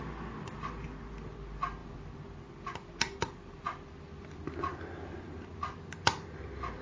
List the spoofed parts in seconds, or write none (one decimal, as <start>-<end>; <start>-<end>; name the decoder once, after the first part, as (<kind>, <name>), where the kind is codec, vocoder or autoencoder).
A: none